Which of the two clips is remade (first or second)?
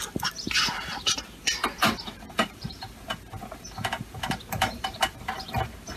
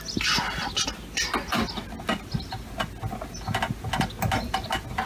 first